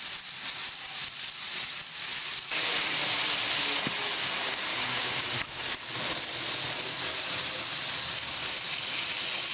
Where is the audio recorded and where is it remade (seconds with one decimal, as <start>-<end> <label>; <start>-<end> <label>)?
0.0-4.7 recorded; 4.7-5.2 remade; 5.2-9.5 recorded